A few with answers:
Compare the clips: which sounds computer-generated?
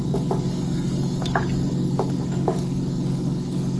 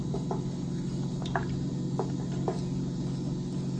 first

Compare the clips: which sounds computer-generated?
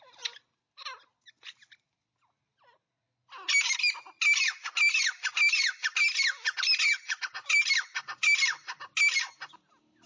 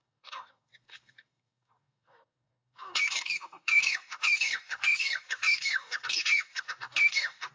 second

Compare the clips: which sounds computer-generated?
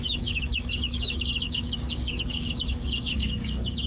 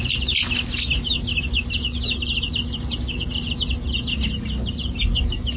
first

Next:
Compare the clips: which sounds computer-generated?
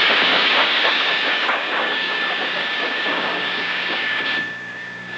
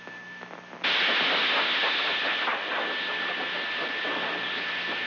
first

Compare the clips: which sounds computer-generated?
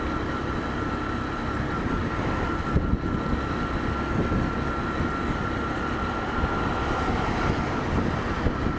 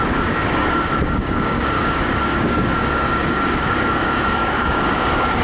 second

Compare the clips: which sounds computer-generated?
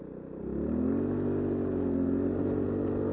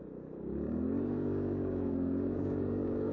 second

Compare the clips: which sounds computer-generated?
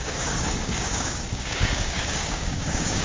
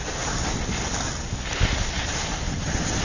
first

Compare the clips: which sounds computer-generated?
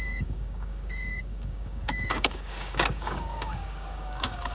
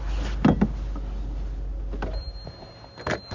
first